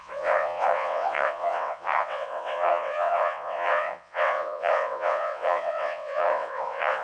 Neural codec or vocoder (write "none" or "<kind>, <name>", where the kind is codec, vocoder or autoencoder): vocoder, WaveNeXt